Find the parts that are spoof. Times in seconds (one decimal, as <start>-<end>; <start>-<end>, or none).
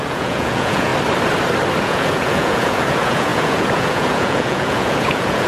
0.0-0.9; 1.8-5.5